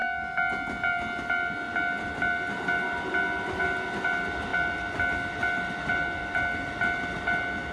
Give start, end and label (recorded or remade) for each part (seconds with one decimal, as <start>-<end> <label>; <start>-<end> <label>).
0.0-7.7 recorded